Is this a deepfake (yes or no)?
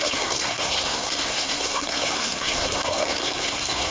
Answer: yes